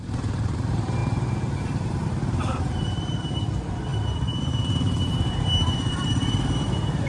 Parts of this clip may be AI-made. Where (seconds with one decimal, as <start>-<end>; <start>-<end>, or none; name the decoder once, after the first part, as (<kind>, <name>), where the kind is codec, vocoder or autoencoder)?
0.0-3.9 (vocoder, BigVGAN v2); 4.4-7.1